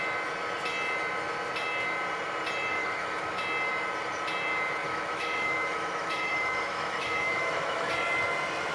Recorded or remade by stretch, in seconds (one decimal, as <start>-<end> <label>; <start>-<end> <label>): 0.0-2.7 recorded; 2.7-3.4 remade; 3.4-4.8 recorded; 4.8-7.9 remade; 7.9-8.7 recorded